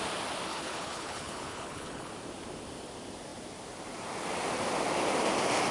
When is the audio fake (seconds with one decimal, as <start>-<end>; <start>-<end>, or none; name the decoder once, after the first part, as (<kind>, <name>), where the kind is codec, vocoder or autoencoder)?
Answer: 0.5-2.1 (codec, HILCodec)